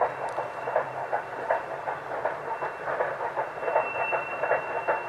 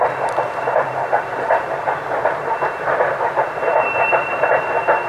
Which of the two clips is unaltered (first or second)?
first